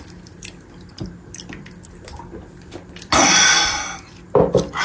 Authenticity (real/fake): real